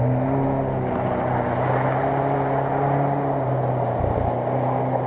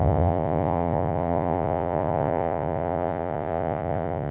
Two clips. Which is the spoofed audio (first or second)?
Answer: second